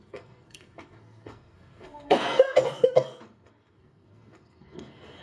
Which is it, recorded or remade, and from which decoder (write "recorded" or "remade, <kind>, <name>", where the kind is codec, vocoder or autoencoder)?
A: remade, codec, SNAC